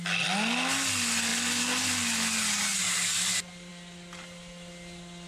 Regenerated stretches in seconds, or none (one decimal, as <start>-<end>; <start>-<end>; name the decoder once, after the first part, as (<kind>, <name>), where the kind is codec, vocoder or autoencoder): none